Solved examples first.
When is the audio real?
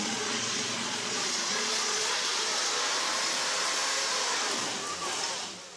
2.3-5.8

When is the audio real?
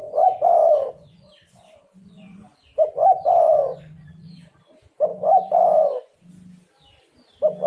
4.6-5.1; 6.3-7.7